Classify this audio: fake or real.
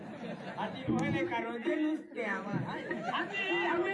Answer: real